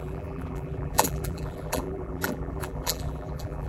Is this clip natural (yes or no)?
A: no